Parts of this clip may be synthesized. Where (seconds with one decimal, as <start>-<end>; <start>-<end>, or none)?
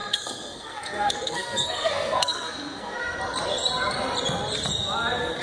0.0-3.2